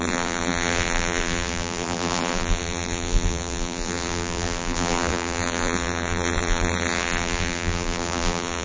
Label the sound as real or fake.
fake